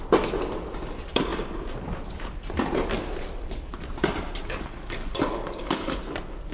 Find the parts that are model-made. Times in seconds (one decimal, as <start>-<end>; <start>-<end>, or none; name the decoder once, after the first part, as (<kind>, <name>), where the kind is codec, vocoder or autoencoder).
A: 4.4-6.0 (codec, DAC)